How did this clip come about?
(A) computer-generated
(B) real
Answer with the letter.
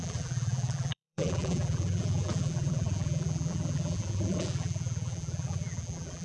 A